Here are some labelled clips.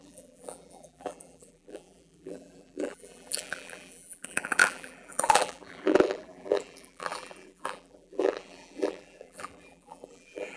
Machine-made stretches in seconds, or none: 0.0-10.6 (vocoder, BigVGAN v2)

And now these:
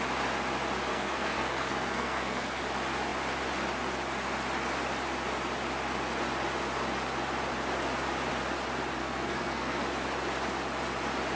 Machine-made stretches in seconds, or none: 0.9-2.6 (codec, SNAC); 9.0-9.8

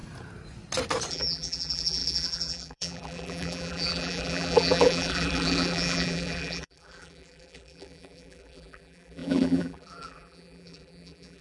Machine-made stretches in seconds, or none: 1.1-11.4 (vocoder, BigVGAN v2)

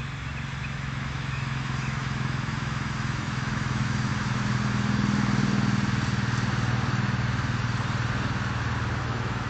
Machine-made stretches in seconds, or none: 0.6-4.1 (autoencoder, DAC-VAE); 9.0-9.5

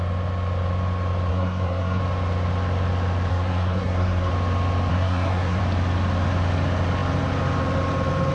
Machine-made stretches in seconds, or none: 1.3-2.0 (codec, SNAC); 3.3-4.3; 4.9-5.6